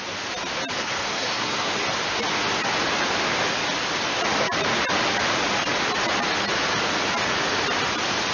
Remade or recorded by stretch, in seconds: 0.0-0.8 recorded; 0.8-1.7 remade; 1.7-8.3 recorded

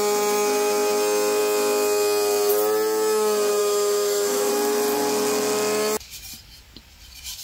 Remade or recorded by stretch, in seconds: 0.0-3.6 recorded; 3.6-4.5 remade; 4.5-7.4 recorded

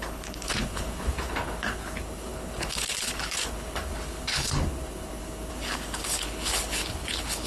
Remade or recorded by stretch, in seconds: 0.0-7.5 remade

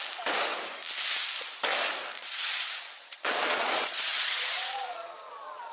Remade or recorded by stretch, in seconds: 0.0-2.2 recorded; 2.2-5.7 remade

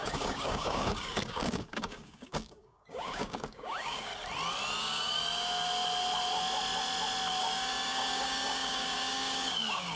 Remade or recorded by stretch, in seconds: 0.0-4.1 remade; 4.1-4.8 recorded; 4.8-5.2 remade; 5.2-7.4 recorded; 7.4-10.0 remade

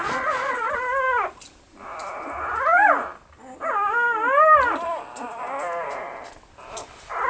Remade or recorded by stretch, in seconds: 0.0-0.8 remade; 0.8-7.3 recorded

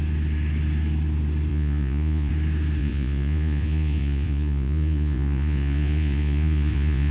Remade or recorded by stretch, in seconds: 0.0-1.5 recorded; 1.5-2.3 remade; 2.3-2.8 recorded; 2.8-7.1 remade

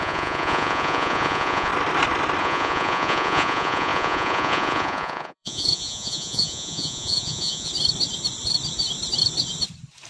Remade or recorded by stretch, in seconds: 0.0-1.7 remade; 1.7-2.4 recorded; 2.4-7.7 remade; 7.7-10.1 recorded